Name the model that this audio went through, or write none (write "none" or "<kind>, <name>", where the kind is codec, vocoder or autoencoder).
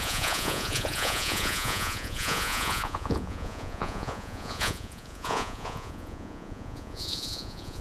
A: vocoder, Vocos